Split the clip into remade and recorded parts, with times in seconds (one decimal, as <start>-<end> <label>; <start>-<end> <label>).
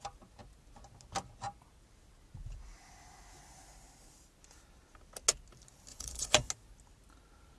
0.0-5.9 recorded; 5.9-6.5 remade; 6.5-7.6 recorded